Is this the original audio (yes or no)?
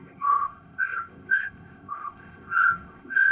no